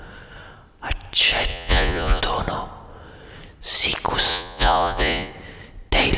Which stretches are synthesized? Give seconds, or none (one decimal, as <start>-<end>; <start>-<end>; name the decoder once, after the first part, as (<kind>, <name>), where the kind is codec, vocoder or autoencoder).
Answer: 1.5-2.2 (vocoder, Vocos); 4.3-5.3